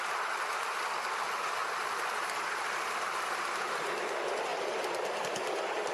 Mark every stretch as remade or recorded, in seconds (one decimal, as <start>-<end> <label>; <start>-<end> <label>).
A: 0.0-1.6 recorded; 1.6-2.4 remade; 2.4-4.5 recorded; 4.5-5.9 remade

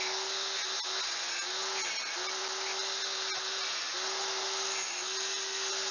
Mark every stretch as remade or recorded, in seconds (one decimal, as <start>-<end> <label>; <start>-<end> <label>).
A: 0.0-5.9 recorded

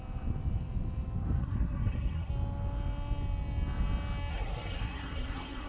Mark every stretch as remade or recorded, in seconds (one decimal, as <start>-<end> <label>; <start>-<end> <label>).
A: 0.0-1.4 recorded; 1.4-2.3 remade; 2.3-4.3 recorded; 4.3-5.7 remade

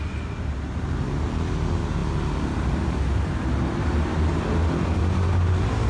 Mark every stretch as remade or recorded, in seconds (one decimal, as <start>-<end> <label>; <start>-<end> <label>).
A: 0.0-5.9 recorded